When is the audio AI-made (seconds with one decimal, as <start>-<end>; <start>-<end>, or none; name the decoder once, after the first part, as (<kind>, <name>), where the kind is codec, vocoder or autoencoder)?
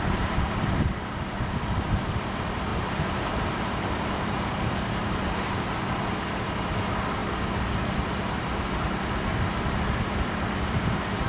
0.0-11.3 (vocoder, BigVGAN v2)